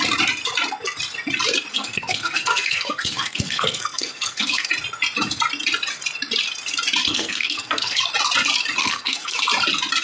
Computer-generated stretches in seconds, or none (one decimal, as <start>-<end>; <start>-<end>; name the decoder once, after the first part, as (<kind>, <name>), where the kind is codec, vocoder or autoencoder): 1.7-4.7 (codec, SNAC); 7.0-8.0; 8.8-9.4